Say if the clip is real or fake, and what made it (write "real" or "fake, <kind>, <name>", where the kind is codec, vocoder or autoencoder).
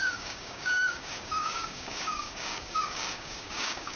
fake, codec, DAC